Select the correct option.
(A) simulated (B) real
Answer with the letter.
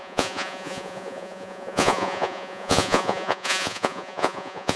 A